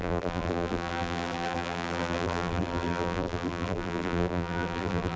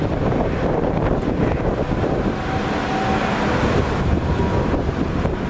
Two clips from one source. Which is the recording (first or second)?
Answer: second